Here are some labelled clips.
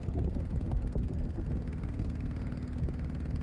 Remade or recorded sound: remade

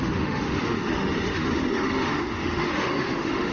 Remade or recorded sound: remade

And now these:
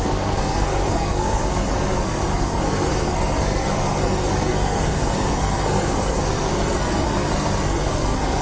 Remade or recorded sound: remade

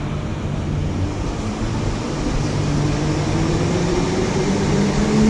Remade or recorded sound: recorded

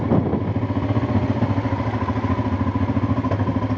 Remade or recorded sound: recorded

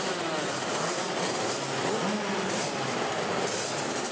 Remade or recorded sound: recorded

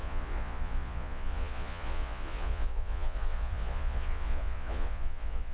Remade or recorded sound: remade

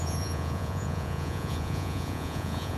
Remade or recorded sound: remade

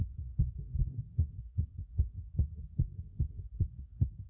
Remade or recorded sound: remade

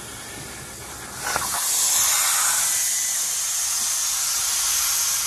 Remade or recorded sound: recorded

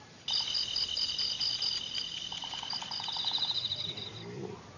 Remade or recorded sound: recorded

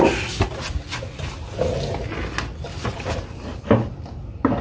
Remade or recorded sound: recorded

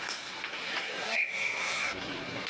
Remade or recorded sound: remade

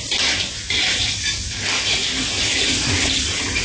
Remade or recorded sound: recorded